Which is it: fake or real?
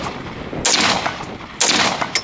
real